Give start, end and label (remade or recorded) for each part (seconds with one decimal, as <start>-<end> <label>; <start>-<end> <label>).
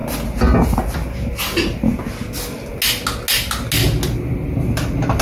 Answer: 0.0-5.2 recorded